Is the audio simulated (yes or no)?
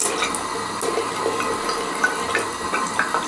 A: no